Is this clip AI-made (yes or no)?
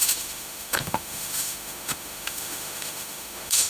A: yes